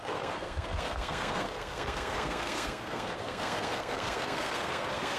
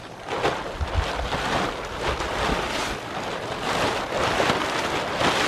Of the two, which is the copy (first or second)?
first